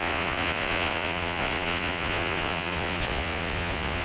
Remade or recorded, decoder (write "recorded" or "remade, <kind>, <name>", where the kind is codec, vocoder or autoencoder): remade, vocoder, Vocos